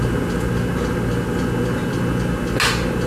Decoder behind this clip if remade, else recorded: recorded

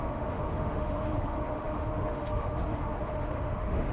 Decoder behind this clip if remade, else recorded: remade, autoencoder, DAC-VAE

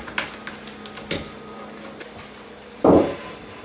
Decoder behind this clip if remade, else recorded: recorded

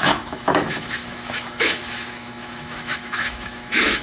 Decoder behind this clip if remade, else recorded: remade, autoencoder, DAC-VAE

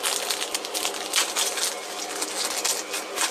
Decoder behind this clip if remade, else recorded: recorded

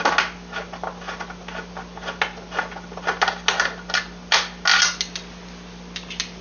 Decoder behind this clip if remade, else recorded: recorded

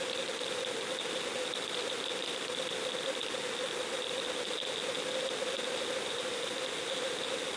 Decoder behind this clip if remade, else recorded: recorded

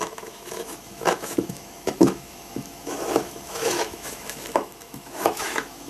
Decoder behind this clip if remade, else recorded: remade, autoencoder, DAC-VAE